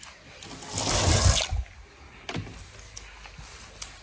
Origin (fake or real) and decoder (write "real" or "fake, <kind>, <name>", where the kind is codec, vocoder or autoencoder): real